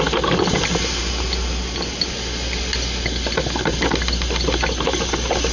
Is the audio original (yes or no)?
yes